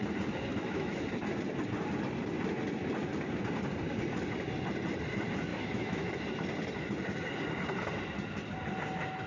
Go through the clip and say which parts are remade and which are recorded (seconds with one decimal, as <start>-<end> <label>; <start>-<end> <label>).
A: 0.0-0.5 recorded; 0.5-1.1 remade; 1.1-5.5 recorded; 5.5-6.1 remade; 6.1-9.3 recorded